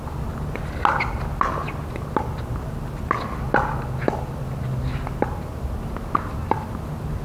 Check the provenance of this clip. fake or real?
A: real